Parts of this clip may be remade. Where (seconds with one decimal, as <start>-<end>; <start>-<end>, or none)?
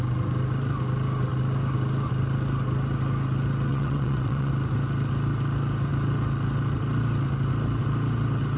3.7-4.5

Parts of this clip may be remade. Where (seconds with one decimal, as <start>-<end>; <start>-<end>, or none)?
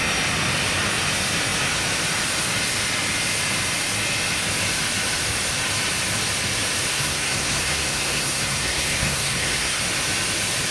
6.9-9.8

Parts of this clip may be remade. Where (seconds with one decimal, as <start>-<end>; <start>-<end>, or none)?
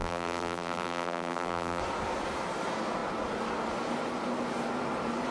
0.0-1.8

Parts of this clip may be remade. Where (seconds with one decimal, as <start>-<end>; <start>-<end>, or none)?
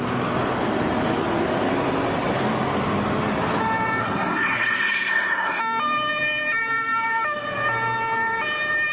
4.0-5.6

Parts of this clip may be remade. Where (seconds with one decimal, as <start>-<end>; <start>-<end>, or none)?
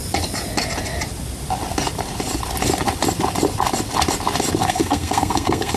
4.6-5.8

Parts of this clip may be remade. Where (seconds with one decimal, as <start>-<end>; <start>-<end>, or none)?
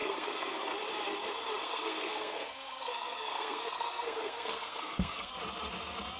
0.0-0.7; 1.6-5.3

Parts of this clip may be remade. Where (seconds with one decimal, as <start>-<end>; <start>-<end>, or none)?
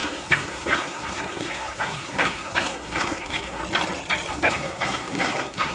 0.0-3.6; 4.3-5.7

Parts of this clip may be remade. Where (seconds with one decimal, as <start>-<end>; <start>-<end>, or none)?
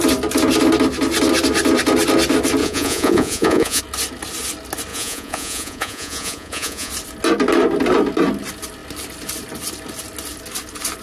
2.6-3.8; 4.9-6.9